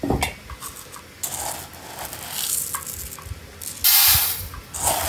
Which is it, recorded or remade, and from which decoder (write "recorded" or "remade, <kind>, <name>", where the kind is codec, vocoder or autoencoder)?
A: recorded